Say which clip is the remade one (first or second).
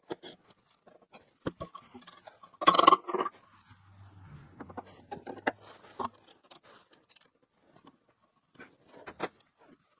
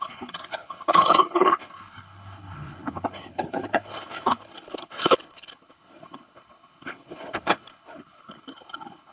second